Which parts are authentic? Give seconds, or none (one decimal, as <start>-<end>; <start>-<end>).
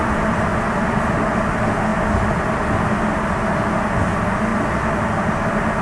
0.0-5.8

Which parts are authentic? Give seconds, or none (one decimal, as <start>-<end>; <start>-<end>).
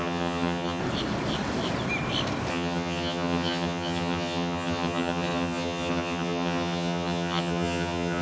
0.8-2.5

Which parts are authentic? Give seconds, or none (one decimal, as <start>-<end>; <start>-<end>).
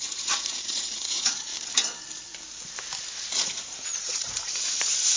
1.5-3.4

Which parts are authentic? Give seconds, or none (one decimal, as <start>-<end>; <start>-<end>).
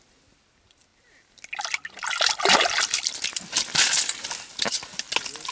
0.0-5.5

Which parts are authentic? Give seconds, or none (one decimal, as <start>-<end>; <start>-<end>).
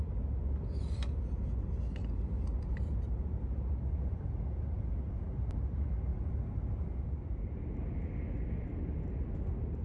0.0-2.5; 5.5-6.1; 7.9-9.8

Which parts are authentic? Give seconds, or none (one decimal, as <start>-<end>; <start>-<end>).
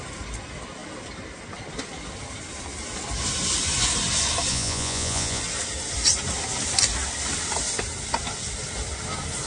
0.0-4.5; 5.4-9.5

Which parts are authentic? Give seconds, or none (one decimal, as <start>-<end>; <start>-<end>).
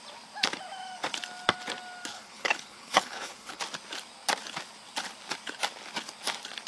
0.0-2.1; 3.6-6.7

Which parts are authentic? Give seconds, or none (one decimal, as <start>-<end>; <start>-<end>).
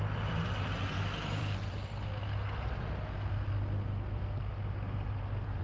1.9-5.6